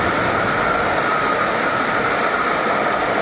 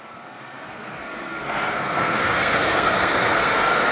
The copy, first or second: second